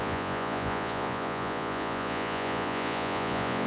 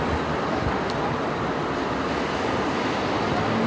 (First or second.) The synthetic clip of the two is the first